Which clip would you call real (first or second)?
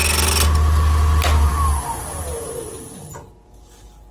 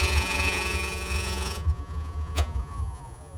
first